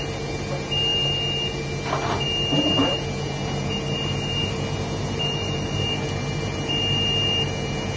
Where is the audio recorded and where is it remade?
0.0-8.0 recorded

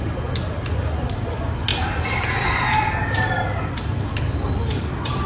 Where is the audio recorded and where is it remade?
0.0-5.3 recorded

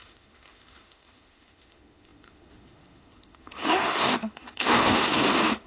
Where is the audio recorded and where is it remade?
0.0-5.7 remade